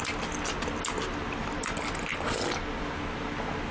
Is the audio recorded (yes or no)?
yes